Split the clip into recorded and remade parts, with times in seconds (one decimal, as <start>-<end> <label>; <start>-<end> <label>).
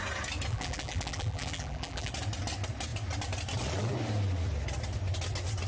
0.0-0.5 recorded; 0.5-2.1 remade; 2.1-5.7 recorded